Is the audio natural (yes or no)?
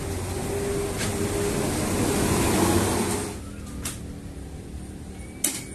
yes